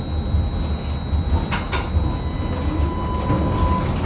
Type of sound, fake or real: real